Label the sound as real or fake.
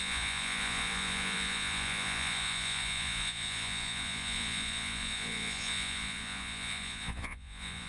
fake